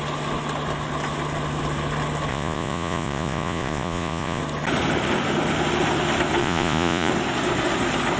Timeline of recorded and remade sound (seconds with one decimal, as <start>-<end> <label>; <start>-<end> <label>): 0.0-2.3 recorded; 2.3-4.4 remade; 4.4-6.4 recorded; 6.4-7.1 remade; 7.1-8.2 recorded